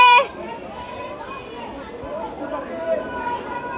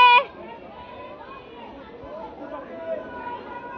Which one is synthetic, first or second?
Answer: first